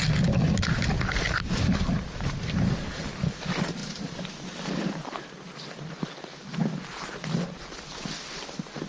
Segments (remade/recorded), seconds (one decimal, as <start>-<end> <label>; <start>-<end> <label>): 0.0-8.9 recorded